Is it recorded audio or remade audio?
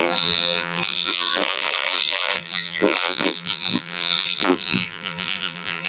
remade